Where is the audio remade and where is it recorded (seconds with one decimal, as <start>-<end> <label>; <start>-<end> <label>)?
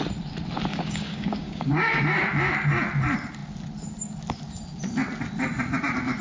0.0-0.7 recorded; 0.7-2.0 remade; 2.0-6.2 recorded